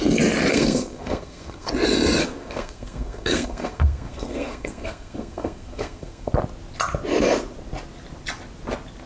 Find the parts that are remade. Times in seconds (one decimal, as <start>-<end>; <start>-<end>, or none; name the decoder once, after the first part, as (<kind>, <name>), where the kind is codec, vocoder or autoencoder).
0.5-1.7 (codec, SNAC); 2.2-6.3